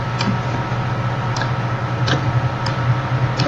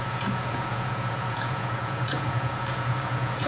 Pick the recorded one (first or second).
first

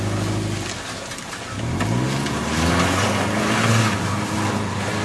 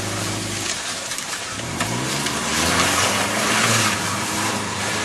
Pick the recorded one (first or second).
first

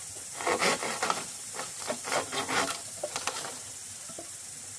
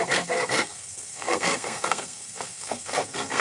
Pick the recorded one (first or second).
first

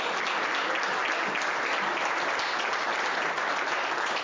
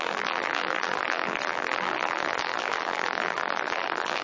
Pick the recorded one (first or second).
first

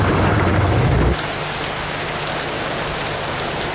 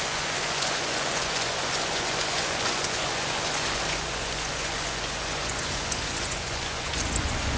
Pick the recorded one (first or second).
first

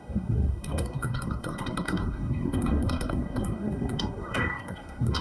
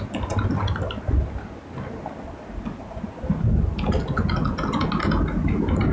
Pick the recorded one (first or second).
second